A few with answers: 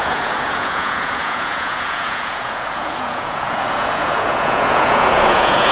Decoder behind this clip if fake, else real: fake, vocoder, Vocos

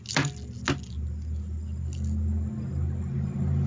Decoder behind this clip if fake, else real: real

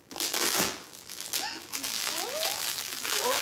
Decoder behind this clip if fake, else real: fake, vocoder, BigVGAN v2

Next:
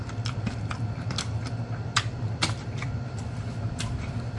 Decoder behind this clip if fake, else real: fake, vocoder, BigVGAN v2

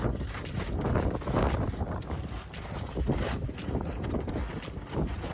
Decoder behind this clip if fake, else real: real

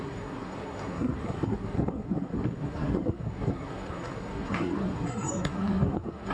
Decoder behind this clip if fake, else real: fake, codec, SNAC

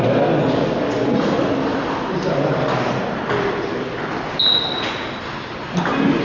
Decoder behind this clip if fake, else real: real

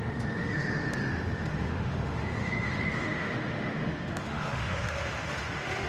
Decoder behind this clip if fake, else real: fake, autoencoder, DAC-VAE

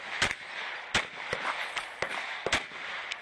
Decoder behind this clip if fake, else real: real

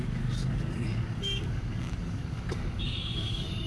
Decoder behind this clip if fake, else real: fake, codec, DAC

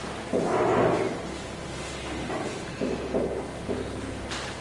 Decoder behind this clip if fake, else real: real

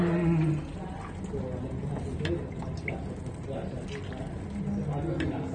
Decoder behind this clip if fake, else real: real